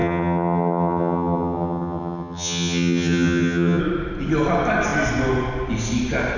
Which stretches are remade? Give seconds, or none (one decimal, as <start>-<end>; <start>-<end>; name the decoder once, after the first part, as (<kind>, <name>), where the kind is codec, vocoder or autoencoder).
0.0-3.8 (vocoder, HiFi-GAN)